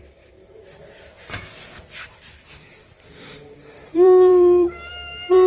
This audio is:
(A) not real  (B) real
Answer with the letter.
A